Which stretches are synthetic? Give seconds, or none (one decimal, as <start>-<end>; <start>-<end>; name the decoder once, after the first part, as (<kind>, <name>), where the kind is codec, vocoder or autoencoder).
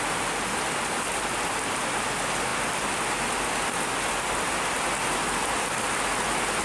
none